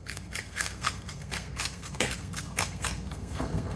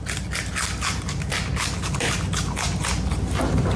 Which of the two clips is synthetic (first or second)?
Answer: first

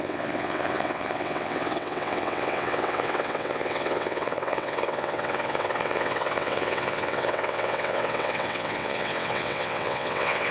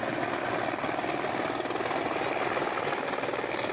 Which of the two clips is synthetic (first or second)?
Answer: first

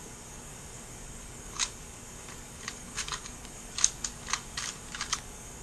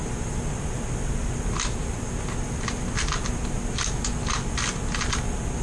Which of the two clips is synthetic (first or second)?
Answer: first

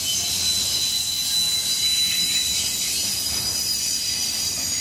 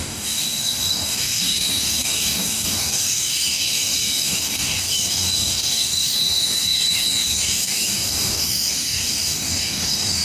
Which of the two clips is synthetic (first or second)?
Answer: second